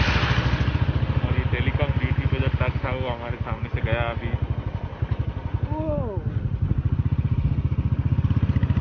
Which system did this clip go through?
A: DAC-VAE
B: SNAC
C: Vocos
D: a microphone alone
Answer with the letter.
D